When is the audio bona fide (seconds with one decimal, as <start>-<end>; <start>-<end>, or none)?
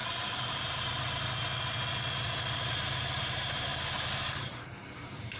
0.0-3.2; 3.7-4.4